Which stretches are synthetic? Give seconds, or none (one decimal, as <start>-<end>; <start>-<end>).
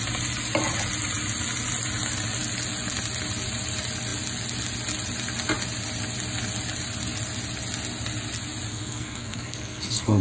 8.7-10.2